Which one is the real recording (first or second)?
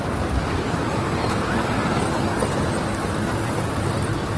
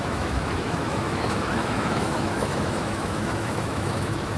first